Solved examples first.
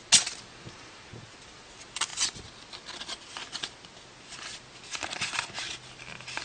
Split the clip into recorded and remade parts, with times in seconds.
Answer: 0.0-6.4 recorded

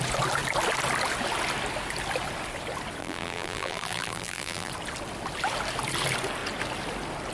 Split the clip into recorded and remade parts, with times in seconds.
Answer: 0.0-3.0 recorded; 3.0-4.7 remade; 4.7-7.3 recorded

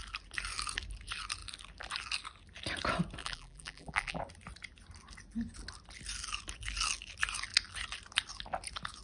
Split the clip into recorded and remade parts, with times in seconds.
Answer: 0.0-3.2 recorded; 3.2-4.2 remade; 4.2-9.0 recorded

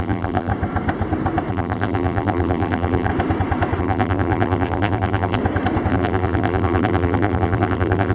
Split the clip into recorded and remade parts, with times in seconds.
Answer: 0.0-0.5 remade; 0.5-1.5 recorded; 1.5-3.1 remade; 3.1-3.8 recorded; 3.8-5.4 remade; 5.4-5.9 recorded; 5.9-8.1 remade

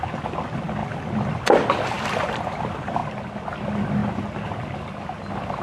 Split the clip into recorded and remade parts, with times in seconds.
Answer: 0.0-0.8 recorded; 0.8-2.6 remade; 2.6-5.6 recorded

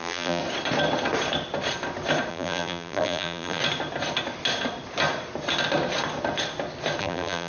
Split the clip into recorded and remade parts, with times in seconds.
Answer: 0.0-0.4 remade; 0.4-2.3 recorded; 2.3-3.6 remade; 3.6-7.0 recorded; 7.0-7.5 remade

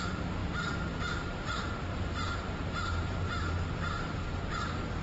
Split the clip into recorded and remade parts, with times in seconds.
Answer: 0.0-1.9 recorded; 1.9-3.5 remade; 3.5-5.0 recorded